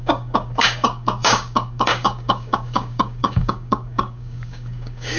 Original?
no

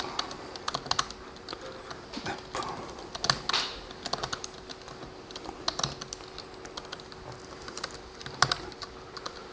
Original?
yes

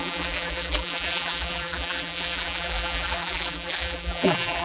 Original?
no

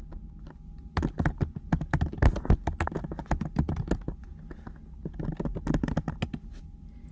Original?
yes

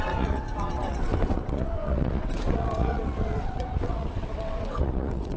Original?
no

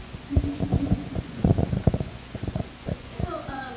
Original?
no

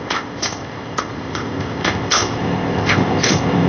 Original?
no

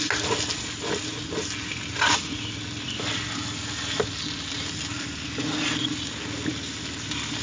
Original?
yes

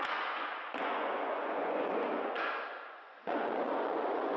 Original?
no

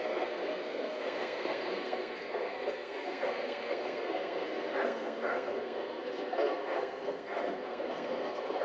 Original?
no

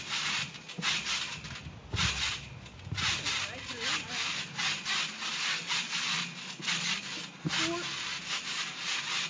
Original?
yes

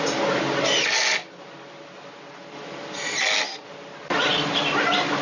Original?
yes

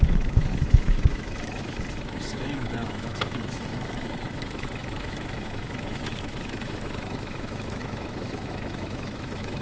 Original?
no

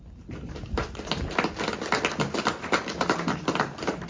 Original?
yes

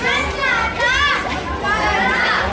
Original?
yes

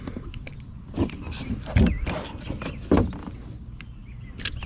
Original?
yes